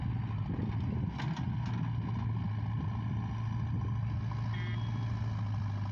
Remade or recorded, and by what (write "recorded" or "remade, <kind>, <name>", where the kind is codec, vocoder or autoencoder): recorded